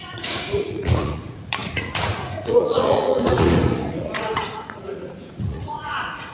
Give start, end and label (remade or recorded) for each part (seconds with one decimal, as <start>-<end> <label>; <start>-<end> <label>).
0.0-6.3 remade